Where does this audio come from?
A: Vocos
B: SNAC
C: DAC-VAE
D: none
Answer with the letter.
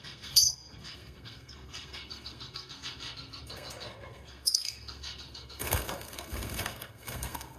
B